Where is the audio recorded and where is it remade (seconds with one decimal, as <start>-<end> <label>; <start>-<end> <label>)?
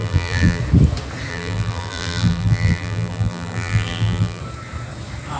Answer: 0.0-0.6 remade; 0.6-1.3 recorded; 1.3-4.4 remade; 4.4-5.4 recorded